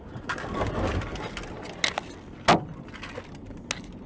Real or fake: real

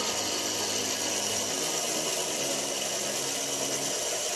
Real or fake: real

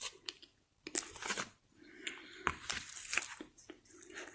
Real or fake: real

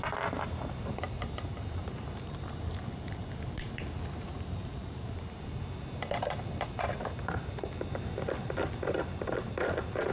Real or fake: fake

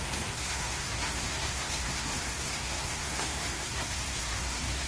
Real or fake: fake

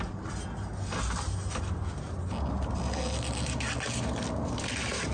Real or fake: real